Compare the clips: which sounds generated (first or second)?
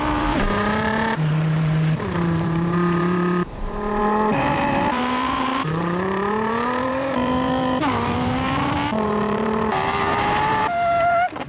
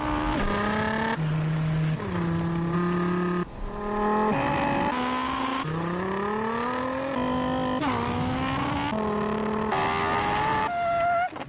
first